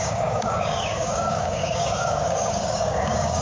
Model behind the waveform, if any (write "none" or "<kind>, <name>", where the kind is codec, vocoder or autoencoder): codec, DAC